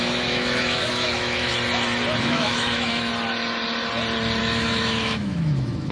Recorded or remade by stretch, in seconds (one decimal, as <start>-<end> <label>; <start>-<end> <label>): 0.0-1.5 remade; 1.5-2.2 recorded; 2.2-3.1 remade; 3.1-4.4 recorded; 4.4-5.9 remade